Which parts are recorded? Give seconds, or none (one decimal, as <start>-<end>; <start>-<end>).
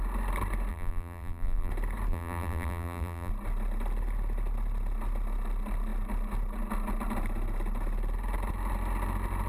0.0-0.7; 1.7-2.1; 3.3-9.5